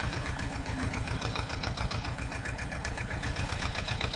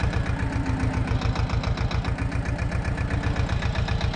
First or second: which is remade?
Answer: first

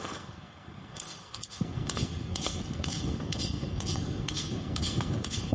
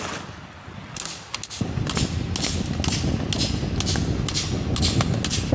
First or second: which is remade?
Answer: first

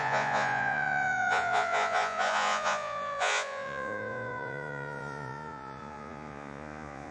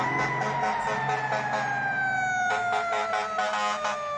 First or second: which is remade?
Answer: first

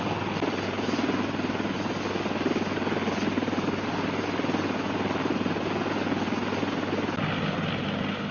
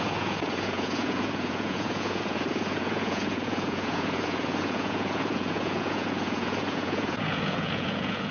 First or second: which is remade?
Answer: second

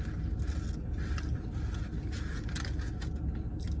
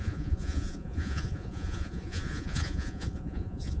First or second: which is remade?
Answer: second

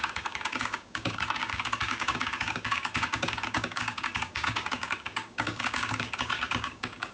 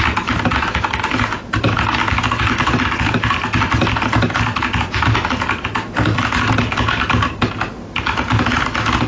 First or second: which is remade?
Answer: first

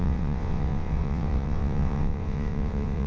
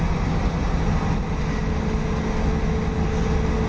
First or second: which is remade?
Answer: first